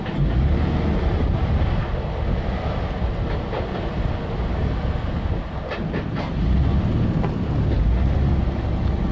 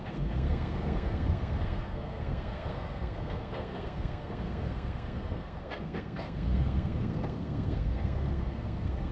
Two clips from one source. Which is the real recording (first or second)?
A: first